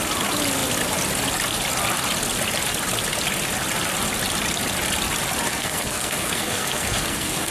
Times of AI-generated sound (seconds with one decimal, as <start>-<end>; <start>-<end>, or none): 5.5-7.5